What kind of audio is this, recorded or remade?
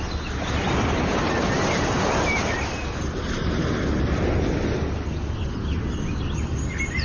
recorded